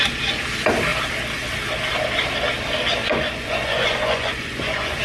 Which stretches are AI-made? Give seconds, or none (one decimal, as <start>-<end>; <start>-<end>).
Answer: 3.0-5.0